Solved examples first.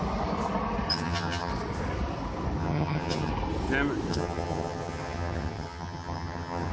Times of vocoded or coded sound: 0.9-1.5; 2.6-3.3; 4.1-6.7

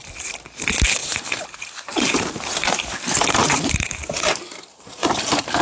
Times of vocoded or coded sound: 1.0-1.6; 3.4-5.6

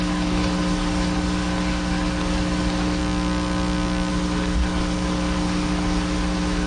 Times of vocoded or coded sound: 0.0-3.0; 4.1-6.7

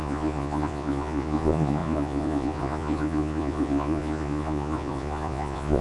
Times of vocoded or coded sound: 0.0-5.8

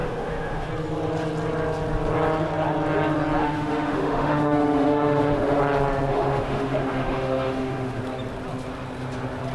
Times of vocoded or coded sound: 0.0-0.7; 3.4-5.6; 6.1-8.0

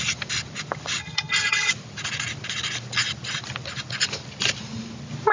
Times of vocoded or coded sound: 1.0-1.7

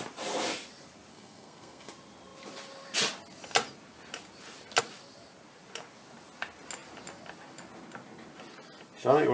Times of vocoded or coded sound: 1.1-1.9

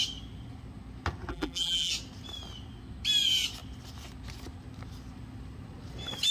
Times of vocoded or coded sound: 1.3-1.9